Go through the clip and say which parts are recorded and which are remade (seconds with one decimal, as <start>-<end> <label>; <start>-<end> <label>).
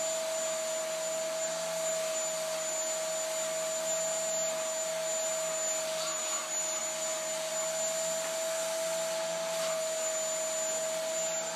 0.0-11.6 recorded